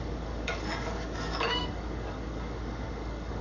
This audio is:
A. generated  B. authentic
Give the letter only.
A